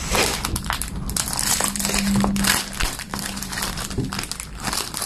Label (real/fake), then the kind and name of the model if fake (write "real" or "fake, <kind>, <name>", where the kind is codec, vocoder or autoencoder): fake, vocoder, BigVGAN v2